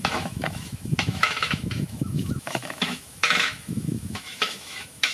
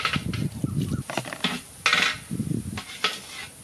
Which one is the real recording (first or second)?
second